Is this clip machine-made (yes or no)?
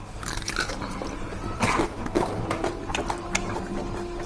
no